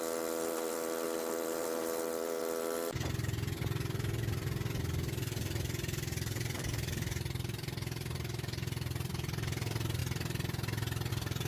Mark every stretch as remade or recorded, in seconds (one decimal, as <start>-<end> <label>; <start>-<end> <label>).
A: 0.0-2.4 remade; 2.4-3.1 recorded; 3.1-10.0 remade; 10.0-11.1 recorded; 11.1-11.5 remade